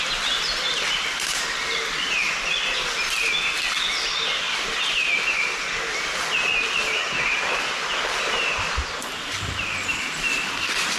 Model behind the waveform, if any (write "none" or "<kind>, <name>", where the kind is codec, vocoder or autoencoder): none